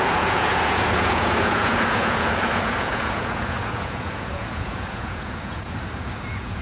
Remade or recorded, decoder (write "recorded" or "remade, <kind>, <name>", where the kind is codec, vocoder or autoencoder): remade, vocoder, Vocos